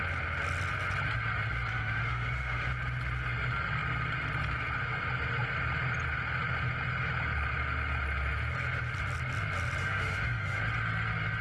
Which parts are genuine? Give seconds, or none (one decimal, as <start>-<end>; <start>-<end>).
0.0-1.7; 2.7-9.8; 10.6-11.4